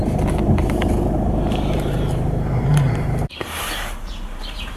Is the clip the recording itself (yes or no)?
no